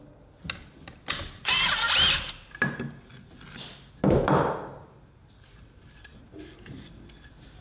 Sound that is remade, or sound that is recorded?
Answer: recorded